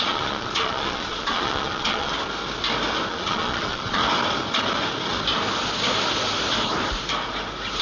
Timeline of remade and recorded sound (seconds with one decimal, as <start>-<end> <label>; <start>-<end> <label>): 0.0-2.1 remade; 2.1-3.1 recorded; 3.1-4.0 remade; 4.0-7.8 recorded